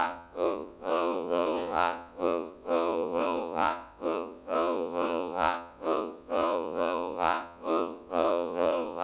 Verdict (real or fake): fake